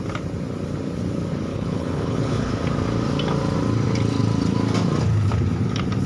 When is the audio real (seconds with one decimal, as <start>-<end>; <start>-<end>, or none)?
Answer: 0.0-1.5; 2.5-6.1